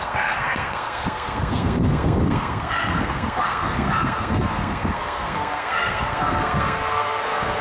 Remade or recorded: remade